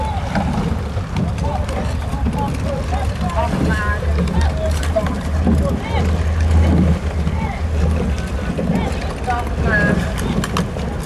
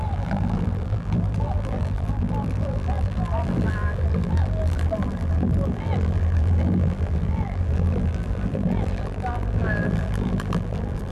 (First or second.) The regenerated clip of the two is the second